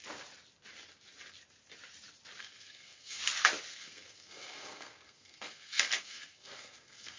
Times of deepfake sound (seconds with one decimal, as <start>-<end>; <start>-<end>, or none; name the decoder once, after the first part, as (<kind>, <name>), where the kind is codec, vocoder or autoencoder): 2.4-3.2 (codec, SNAC); 3.7-7.2